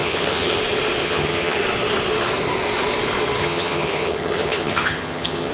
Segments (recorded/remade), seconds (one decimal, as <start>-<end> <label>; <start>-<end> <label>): 0.0-0.6 remade; 0.6-1.0 recorded; 1.0-1.6 remade; 1.6-3.4 recorded; 3.4-5.5 remade